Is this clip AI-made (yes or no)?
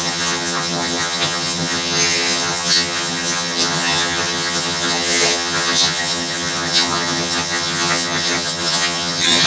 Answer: yes